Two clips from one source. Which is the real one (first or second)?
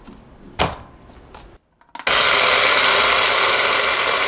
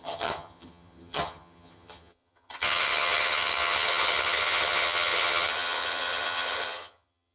first